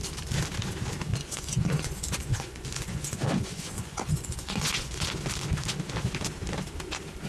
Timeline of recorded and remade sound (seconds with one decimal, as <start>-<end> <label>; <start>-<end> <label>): 0.0-1.1 recorded; 1.1-5.1 remade; 5.1-7.3 recorded